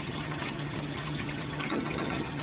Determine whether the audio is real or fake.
fake